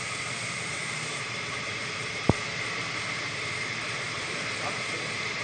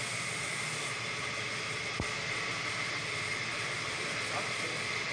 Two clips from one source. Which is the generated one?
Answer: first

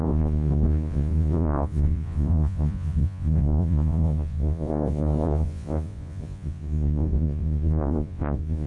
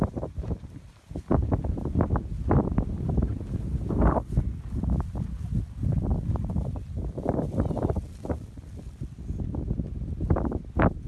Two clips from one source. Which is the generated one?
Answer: first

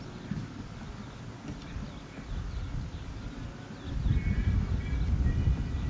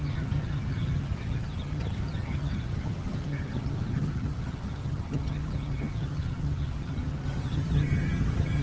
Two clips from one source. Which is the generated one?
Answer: second